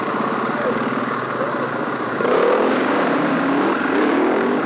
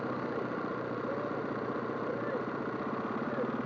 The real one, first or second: second